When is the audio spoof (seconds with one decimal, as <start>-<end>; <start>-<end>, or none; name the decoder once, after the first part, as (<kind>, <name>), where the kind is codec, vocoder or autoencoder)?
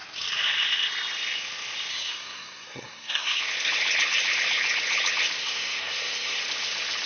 1.9-3.4 (codec, SNAC); 5.4-6.4